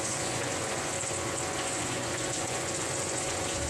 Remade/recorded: remade